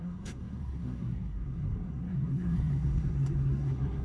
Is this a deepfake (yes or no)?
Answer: yes